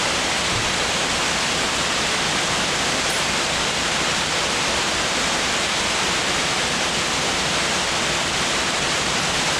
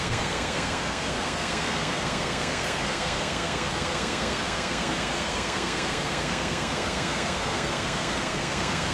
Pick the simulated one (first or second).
second